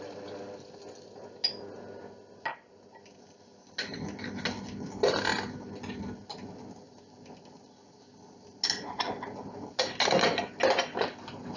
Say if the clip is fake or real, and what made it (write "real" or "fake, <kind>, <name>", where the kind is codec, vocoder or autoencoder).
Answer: real